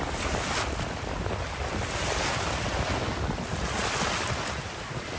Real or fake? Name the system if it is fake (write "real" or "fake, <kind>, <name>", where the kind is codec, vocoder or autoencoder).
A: real